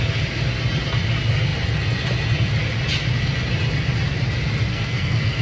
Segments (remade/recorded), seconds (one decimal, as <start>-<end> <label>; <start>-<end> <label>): 0.0-4.7 recorded; 4.7-5.4 remade